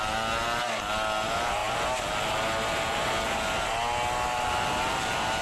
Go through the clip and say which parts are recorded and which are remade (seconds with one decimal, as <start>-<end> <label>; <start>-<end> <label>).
0.0-5.4 recorded